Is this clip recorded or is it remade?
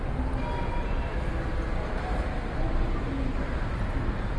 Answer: recorded